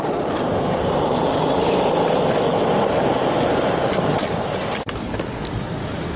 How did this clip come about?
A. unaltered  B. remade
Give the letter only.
A